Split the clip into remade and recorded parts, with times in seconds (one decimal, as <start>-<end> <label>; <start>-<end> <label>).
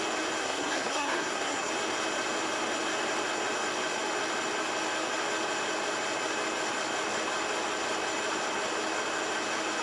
0.0-0.4 recorded; 0.4-1.7 remade; 1.7-9.8 recorded